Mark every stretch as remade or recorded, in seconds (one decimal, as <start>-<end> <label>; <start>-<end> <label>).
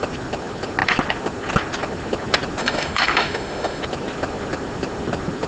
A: 0.0-2.6 recorded; 2.6-3.8 remade; 3.8-5.5 recorded